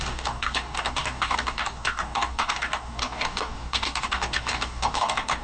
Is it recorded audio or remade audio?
remade